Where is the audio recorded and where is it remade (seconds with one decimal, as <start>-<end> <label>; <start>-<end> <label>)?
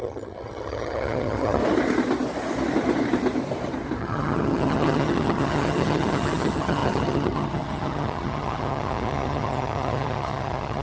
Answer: 0.0-1.6 remade; 1.6-4.0 recorded; 4.0-10.8 remade